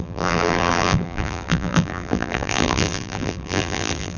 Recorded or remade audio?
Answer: remade